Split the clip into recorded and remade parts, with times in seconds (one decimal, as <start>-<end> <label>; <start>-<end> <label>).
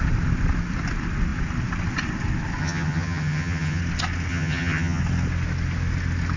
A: 0.0-2.6 recorded; 2.6-3.8 remade; 3.8-4.3 recorded; 4.3-5.0 remade; 5.0-6.4 recorded